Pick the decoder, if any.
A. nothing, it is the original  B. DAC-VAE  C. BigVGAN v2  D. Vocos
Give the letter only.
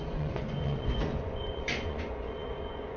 D